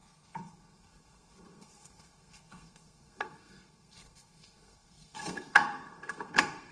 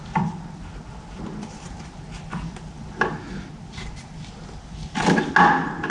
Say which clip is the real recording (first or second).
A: second